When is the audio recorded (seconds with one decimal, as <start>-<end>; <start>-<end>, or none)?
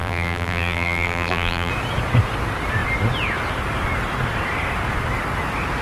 1.7-5.8